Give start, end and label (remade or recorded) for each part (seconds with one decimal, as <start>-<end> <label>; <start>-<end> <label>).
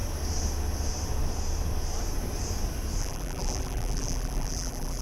0.0-3.0 recorded; 3.0-5.0 remade